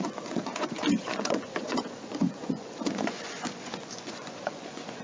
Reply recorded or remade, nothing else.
remade